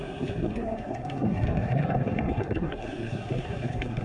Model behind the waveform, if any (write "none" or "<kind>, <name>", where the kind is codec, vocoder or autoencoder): codec, SNAC